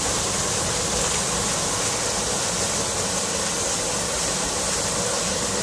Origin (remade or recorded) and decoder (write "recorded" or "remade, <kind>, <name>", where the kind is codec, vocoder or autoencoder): recorded